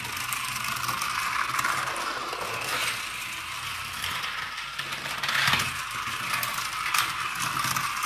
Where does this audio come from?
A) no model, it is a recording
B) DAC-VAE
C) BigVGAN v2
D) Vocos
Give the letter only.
A